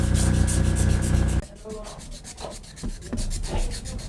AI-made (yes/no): no